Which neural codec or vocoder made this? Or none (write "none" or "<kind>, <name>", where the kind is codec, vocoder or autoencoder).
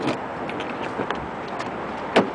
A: none